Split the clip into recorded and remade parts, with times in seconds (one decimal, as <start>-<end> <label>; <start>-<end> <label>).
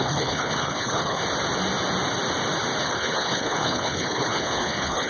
0.0-1.2 remade; 1.2-2.8 recorded; 2.8-5.1 remade